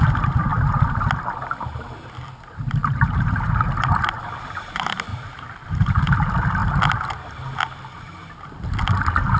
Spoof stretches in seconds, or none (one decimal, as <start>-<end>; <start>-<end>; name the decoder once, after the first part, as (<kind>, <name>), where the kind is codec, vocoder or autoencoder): 2.8-3.5 (vocoder, BigVGAN v2); 5.1-6.0